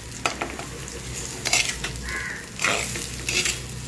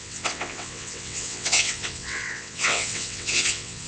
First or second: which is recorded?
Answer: first